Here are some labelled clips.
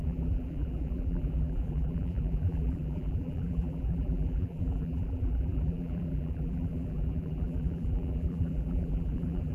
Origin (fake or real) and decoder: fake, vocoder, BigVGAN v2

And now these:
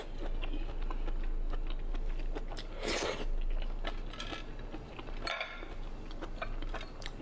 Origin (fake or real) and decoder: real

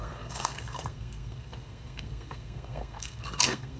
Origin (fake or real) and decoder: fake, codec, SNAC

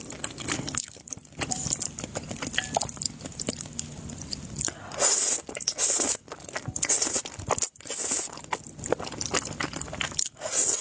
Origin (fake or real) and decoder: real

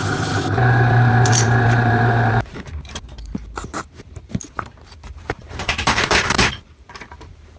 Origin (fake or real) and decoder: fake, vocoder, BigVGAN v2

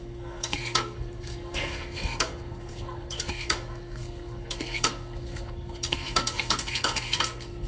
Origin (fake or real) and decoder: fake, codec, SNAC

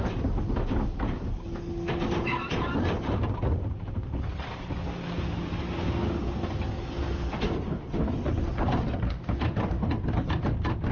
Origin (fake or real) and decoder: real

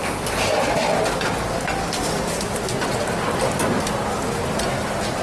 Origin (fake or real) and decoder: real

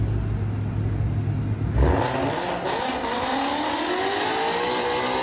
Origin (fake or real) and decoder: real